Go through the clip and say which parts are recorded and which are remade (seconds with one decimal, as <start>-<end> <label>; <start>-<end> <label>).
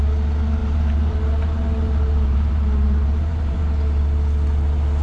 0.0-0.6 recorded; 0.6-3.6 remade; 3.6-5.0 recorded